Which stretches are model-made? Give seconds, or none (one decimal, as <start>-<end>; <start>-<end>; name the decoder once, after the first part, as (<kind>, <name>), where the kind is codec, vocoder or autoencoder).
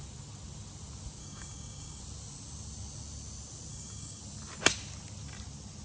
1.2-2.0 (codec, DAC); 3.7-4.2